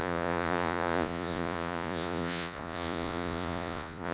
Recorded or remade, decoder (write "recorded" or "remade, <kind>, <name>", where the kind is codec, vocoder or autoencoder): remade, vocoder, Vocos